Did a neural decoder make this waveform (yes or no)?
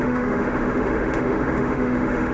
yes